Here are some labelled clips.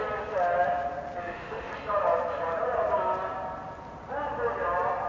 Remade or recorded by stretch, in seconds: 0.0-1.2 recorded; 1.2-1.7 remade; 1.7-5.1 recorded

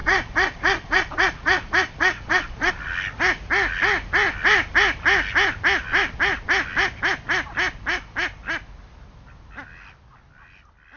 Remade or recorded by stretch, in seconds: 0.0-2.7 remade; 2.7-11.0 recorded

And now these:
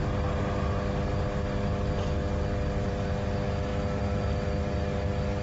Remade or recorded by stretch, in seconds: 0.0-5.4 recorded